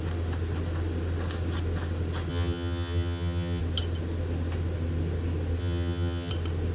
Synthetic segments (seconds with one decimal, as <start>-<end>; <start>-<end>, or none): 2.3-3.6; 5.6-6.3